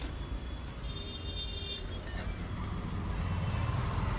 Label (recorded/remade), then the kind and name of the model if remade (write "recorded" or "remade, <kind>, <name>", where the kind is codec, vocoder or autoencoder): recorded